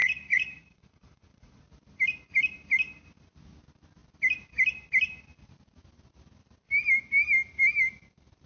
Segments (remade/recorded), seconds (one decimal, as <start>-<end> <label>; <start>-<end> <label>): 0.0-1.6 remade; 1.6-8.5 recorded